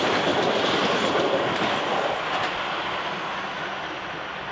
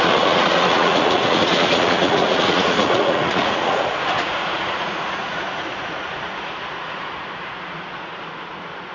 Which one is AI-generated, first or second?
second